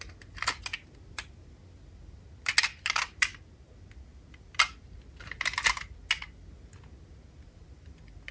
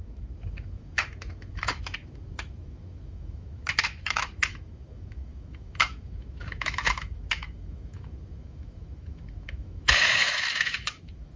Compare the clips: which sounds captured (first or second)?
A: first